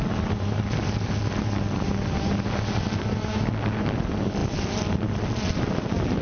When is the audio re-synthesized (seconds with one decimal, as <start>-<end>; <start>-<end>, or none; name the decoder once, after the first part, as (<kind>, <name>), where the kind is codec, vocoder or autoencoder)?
none